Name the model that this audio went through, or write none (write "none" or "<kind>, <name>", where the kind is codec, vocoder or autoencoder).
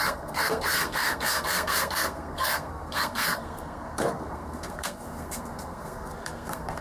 codec, SNAC